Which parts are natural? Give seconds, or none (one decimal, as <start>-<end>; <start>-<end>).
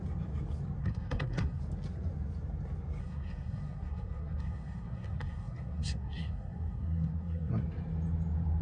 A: 0.0-0.8; 1.6-3.0; 7.5-8.6